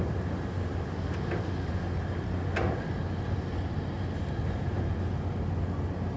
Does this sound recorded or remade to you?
recorded